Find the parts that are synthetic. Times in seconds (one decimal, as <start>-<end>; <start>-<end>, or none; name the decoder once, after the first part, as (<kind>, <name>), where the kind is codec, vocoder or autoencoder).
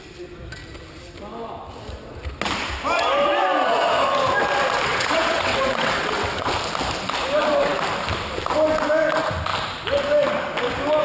4.9-6.5 (vocoder, WaveNeXt)